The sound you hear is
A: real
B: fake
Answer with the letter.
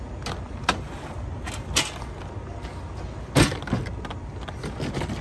A